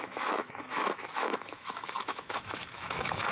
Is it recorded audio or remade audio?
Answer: remade